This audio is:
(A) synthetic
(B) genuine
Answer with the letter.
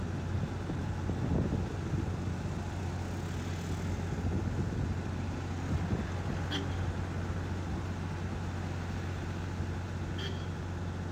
B